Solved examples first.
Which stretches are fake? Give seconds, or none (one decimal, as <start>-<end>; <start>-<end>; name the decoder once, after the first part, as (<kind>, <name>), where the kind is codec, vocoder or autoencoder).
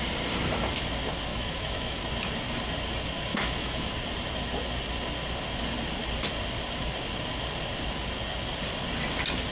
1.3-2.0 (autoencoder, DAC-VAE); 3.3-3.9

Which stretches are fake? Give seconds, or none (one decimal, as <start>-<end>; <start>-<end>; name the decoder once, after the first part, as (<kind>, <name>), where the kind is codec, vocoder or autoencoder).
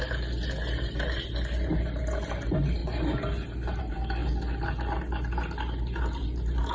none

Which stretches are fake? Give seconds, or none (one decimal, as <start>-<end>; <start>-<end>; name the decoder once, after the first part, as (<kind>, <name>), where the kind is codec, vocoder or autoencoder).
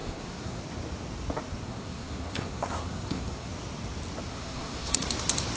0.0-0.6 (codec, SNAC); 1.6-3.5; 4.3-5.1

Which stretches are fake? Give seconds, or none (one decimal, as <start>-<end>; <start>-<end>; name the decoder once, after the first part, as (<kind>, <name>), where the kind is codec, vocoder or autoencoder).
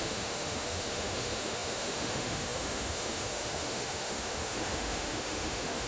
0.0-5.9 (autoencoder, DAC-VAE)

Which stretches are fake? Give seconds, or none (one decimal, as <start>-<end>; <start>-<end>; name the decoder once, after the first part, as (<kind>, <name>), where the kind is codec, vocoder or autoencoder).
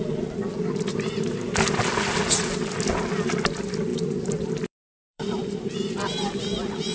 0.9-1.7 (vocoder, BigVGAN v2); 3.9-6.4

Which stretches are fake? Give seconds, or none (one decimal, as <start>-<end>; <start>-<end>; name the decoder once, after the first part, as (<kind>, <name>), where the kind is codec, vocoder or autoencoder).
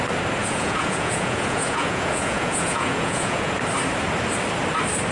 0.4-3.5 (vocoder, Vocos)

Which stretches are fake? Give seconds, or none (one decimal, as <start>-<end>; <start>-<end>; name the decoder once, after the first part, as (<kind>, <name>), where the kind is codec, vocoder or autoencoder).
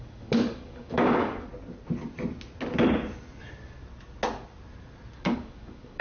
0.0-1.5 (codec, DAC); 5.1-6.0